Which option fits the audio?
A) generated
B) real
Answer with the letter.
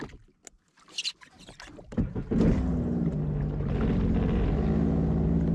B